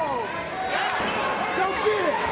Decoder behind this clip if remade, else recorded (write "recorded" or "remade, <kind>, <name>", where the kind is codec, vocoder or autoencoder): recorded